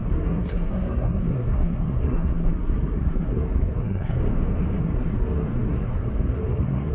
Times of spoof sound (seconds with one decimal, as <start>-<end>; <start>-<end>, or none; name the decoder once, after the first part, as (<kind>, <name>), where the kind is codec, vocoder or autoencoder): 0.0-4.2 (codec, SNAC); 4.8-6.9